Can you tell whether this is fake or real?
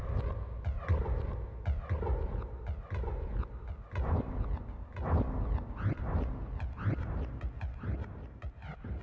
real